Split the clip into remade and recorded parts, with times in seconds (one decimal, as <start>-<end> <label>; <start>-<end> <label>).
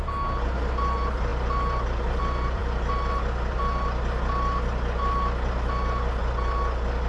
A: 0.0-7.1 recorded